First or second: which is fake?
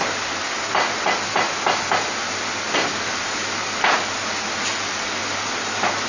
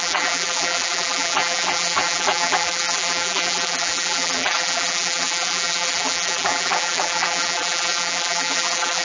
second